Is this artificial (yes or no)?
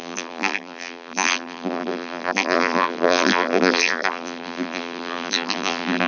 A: yes